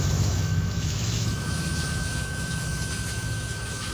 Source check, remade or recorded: remade